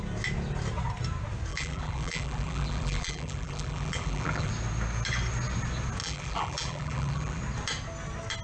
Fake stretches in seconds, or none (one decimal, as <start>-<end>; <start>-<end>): 1.5-4.5; 6.0-7.4